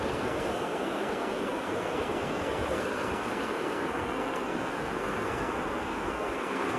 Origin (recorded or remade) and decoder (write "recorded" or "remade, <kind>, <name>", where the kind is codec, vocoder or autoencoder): remade, codec, SNAC